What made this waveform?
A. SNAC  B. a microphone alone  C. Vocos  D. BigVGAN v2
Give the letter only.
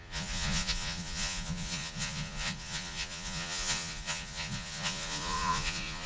C